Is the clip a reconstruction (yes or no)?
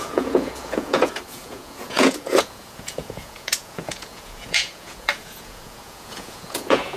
yes